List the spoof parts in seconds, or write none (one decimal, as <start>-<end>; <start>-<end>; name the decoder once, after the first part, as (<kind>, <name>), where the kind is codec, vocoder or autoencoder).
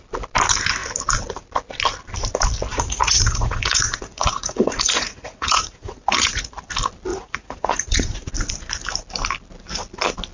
2.7-6.4 (vocoder, Vocos); 7.1-8.3